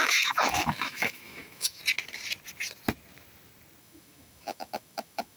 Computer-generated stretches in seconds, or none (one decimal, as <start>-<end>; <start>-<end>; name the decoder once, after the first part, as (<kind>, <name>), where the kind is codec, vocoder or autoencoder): 0.0-1.8 (autoencoder, DAC-VAE); 3.8-5.4